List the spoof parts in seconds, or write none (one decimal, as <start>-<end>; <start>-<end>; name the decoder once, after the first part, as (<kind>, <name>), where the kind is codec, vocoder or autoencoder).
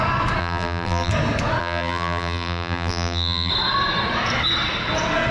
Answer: 0.4-1.1 (vocoder, BigVGAN v2); 1.6-3.5